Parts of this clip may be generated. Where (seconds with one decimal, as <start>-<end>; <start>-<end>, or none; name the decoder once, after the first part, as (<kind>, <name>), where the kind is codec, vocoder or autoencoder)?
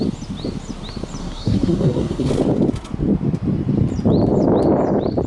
1.2-2.3 (codec, SNAC)